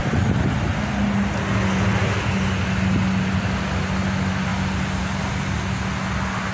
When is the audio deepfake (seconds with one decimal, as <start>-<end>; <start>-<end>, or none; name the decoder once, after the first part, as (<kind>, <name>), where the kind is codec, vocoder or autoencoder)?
none